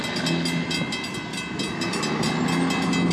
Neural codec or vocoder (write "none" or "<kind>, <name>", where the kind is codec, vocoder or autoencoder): none